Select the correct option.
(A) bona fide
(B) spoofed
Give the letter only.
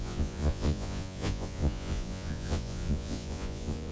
B